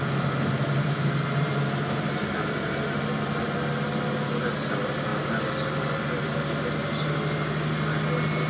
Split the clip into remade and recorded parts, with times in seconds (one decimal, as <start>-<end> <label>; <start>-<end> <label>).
0.0-8.5 recorded